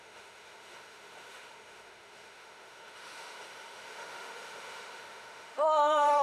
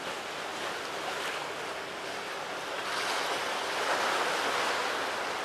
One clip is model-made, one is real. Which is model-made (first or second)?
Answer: first